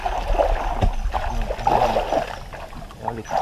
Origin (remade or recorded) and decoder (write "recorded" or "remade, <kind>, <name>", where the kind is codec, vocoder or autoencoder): recorded